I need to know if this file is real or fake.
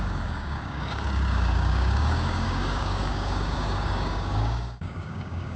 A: fake